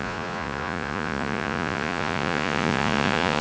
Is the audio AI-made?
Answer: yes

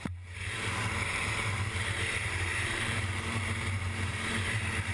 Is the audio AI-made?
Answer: yes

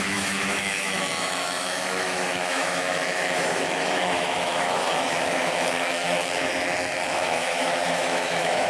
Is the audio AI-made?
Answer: yes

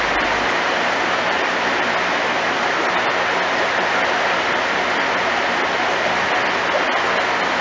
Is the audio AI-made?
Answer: no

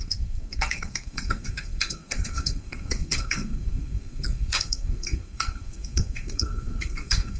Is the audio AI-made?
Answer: yes